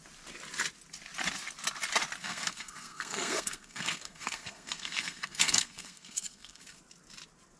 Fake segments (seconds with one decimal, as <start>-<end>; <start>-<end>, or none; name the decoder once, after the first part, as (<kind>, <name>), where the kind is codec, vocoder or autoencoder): 2.2-6.8 (codec, SNAC)